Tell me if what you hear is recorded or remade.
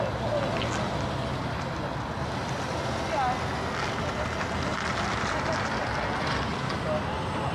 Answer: recorded